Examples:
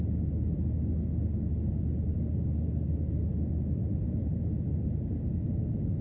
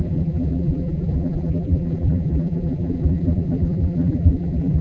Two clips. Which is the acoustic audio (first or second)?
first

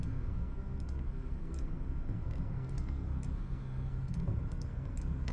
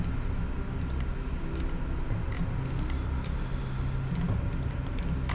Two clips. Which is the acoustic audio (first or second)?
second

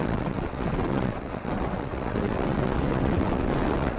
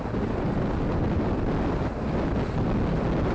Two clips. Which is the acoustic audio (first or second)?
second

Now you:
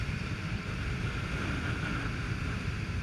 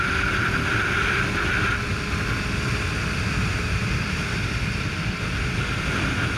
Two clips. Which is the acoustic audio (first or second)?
second